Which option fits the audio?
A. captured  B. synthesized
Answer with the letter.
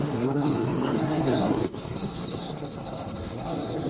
B